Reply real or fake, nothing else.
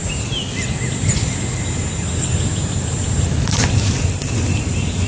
real